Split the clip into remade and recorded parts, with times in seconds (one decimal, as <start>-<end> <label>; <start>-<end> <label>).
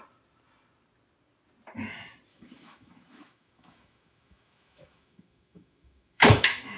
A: 0.0-2.3 recorded; 2.3-6.8 remade